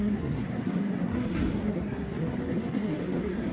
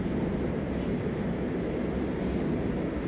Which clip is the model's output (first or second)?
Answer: first